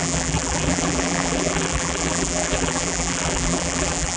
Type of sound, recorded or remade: remade